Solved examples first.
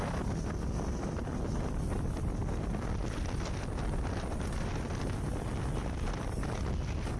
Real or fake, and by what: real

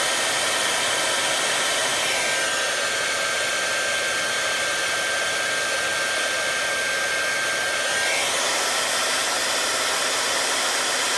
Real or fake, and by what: real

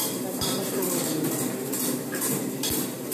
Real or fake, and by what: real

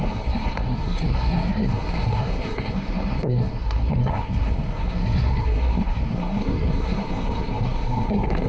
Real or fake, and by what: fake, codec, SNAC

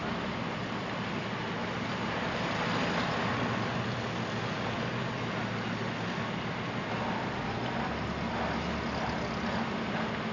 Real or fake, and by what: real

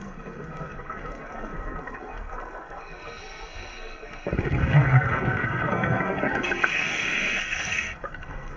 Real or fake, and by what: fake, codec, SNAC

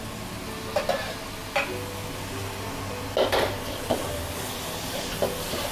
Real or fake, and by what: real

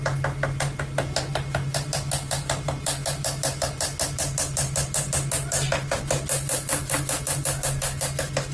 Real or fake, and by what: real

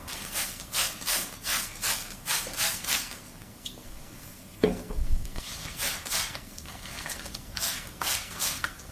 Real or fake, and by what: fake, codec, SNAC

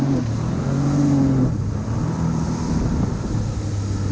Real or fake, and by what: real